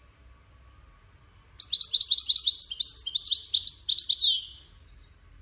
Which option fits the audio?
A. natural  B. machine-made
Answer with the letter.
A